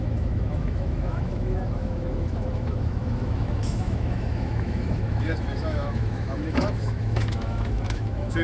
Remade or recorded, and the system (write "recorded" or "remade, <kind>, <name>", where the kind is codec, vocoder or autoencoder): remade, autoencoder, DAC-VAE